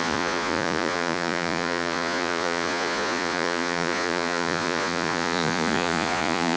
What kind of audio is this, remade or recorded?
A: remade